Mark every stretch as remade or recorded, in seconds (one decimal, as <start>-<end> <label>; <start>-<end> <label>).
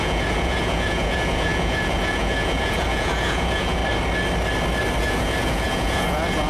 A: 0.0-3.8 remade; 3.8-5.0 recorded; 5.0-6.5 remade